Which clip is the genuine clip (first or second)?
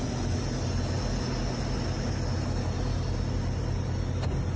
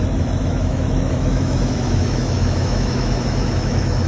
first